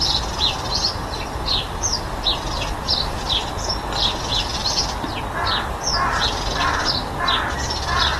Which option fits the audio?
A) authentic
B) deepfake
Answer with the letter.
A